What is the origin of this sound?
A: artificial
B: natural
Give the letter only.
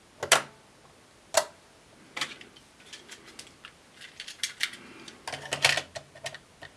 B